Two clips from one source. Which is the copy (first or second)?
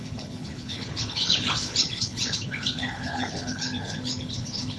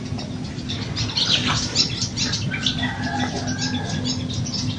first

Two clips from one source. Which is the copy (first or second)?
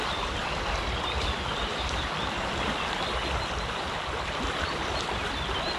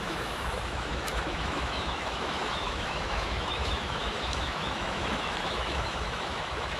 second